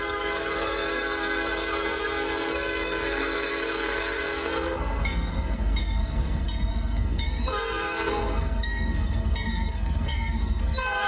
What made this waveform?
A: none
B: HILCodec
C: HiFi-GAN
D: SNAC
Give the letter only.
D